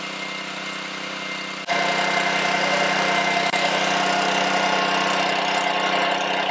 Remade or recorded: recorded